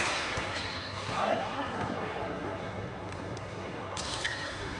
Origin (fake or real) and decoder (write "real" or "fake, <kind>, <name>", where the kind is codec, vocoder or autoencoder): fake, codec, SNAC